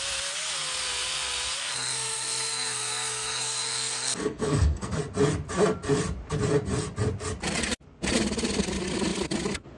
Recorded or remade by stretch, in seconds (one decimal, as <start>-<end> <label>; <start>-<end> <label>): 0.0-1.6 recorded; 1.6-5.0 remade; 5.0-9.8 recorded